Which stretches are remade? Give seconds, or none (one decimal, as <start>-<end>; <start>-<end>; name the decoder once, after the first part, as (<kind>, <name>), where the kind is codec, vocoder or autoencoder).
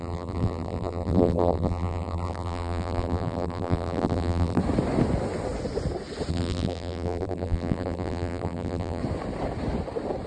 0.0-4.6 (vocoder, BigVGAN v2); 6.3-9.0